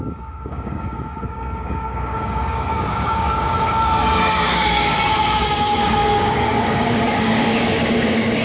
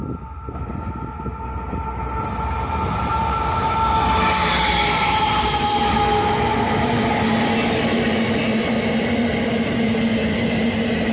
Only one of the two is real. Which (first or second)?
second